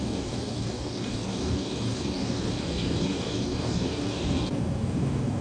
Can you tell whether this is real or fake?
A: fake